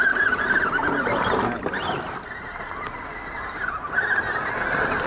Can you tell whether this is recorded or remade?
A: recorded